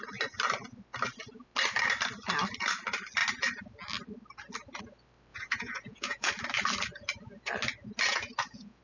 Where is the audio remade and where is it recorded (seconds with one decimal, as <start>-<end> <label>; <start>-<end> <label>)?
0.0-5.3 recorded; 5.3-6.3 remade; 6.3-8.1 recorded; 8.1-8.8 remade

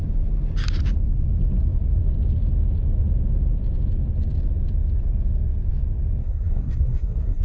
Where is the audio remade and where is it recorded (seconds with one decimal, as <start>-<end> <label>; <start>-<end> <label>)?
0.0-6.2 recorded; 6.2-7.4 remade

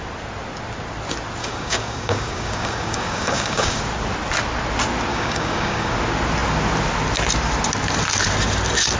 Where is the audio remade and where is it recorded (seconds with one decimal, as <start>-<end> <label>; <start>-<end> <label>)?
0.0-1.4 recorded; 1.4-3.8 remade; 3.8-5.1 recorded; 5.1-5.9 remade; 5.9-9.0 recorded

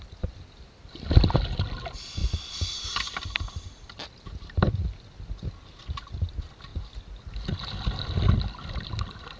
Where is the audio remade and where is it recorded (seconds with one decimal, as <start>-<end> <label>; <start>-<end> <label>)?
0.0-9.4 recorded

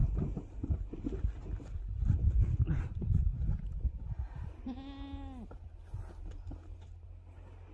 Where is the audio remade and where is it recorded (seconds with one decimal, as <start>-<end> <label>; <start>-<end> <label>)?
0.0-2.2 recorded; 2.2-2.8 remade; 2.8-7.7 recorded

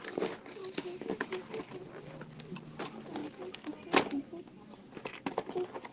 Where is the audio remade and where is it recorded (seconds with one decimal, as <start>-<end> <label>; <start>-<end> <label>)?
0.0-5.9 recorded

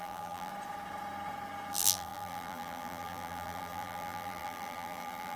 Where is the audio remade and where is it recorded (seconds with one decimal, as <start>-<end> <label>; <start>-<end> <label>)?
0.0-0.5 remade; 0.5-1.7 recorded; 1.7-5.4 remade